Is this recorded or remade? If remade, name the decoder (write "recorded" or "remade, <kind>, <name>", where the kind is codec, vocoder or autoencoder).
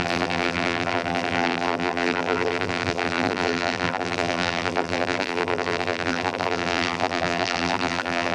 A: remade, vocoder, BigVGAN v2